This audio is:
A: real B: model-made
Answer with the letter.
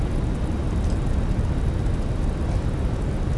A